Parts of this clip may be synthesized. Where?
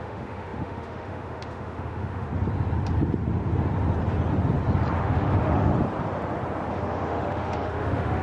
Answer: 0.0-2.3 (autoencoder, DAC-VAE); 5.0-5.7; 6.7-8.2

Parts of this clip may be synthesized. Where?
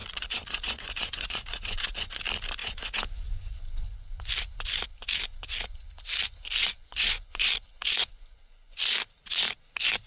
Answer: 0.0-2.2 (vocoder, Vocos); 2.6-4.3; 6.6-7.5; 8.0-8.8